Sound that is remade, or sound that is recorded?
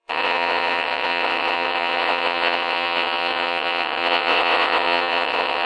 remade